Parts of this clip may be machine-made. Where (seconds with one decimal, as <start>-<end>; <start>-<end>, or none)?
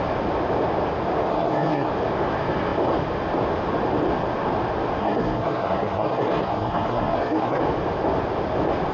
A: 1.3-1.9; 5.0-7.6